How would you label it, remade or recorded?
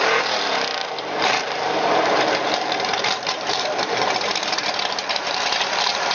remade